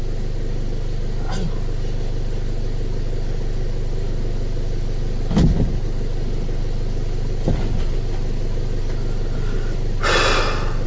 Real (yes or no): yes